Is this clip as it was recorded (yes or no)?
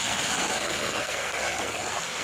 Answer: no